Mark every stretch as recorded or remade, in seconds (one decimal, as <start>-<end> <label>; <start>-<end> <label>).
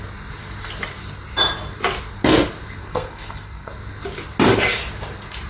0.0-2.8 recorded; 2.8-3.7 remade; 3.7-5.5 recorded